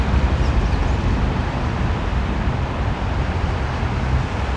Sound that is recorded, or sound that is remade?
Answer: remade